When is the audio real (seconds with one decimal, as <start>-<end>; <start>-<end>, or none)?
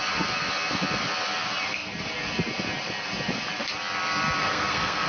0.0-4.4